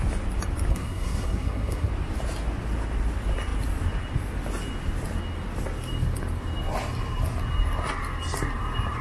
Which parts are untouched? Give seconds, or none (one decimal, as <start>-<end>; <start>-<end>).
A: 0.0-0.7; 1.9-9.0